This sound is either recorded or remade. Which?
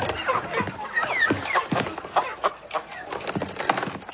recorded